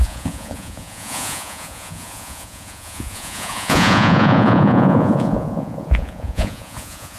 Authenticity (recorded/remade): remade